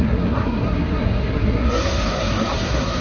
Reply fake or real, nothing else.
fake